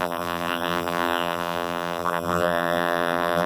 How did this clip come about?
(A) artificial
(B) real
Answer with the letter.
A